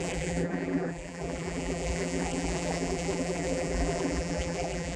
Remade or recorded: remade